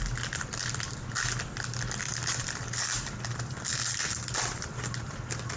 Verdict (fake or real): real